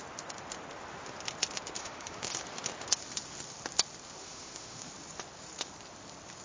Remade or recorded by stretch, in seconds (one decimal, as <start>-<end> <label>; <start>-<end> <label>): 0.0-1.8 recorded; 1.8-2.4 remade; 2.4-4.2 recorded; 4.2-4.9 remade; 4.9-6.4 recorded